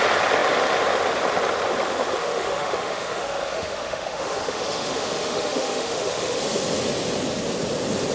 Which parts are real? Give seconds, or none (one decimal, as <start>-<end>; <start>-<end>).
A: 0.0-2.2; 6.4-8.1